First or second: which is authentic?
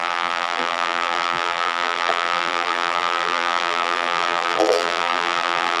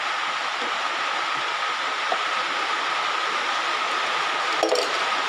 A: second